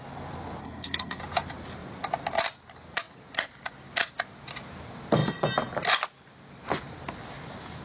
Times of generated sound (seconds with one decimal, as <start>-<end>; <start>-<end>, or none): 0.6-1.2